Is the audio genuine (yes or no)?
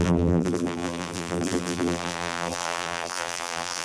no